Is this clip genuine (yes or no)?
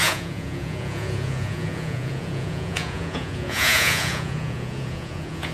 no